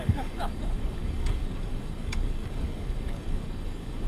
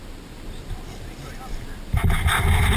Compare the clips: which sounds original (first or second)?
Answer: second